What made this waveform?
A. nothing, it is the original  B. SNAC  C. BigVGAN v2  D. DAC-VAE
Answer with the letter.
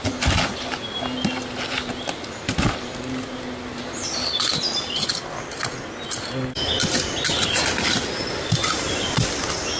A